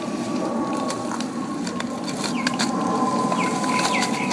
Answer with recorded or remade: recorded